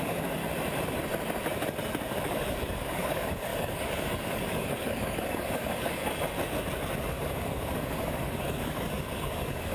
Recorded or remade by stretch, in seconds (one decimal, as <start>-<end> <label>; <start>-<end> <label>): 0.0-0.4 remade; 0.4-2.2 recorded; 2.2-6.0 remade; 6.0-7.1 recorded; 7.1-9.7 remade